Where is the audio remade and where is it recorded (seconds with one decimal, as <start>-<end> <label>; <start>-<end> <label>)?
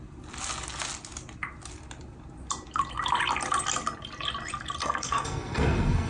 0.0-4.8 recorded; 4.8-6.1 remade